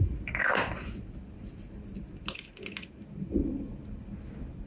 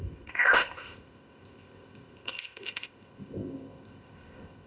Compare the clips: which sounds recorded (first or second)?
first